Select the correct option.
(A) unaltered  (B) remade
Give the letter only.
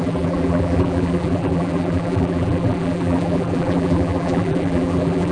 B